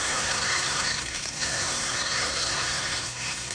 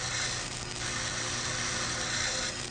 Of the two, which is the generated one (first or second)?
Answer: first